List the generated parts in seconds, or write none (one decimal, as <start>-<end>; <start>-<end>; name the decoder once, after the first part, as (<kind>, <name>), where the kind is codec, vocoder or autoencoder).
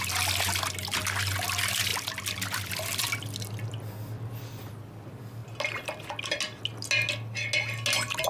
none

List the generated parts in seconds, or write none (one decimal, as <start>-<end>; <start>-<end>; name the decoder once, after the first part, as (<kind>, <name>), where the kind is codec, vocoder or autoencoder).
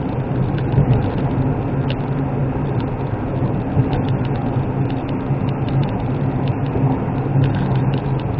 none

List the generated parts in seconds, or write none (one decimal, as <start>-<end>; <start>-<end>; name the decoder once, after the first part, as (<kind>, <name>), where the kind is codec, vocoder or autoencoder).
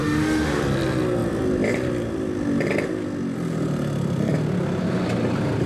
0.0-0.6 (autoencoder, DAC-VAE)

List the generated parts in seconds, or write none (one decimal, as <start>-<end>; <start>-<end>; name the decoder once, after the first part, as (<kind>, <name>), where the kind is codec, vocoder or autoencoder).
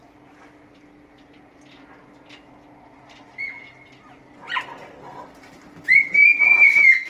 none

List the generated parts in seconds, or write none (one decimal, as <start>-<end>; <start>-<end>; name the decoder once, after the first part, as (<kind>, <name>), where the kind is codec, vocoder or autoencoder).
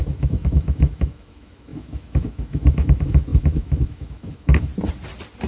0.0-4.7 (autoencoder, DAC-VAE)